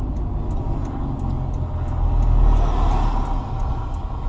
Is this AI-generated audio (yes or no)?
no